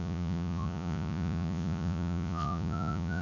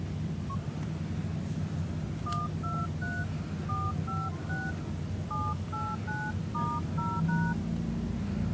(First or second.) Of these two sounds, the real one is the second